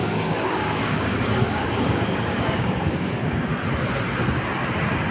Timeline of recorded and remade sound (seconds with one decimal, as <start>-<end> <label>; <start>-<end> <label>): 0.0-3.5 remade; 3.5-5.1 recorded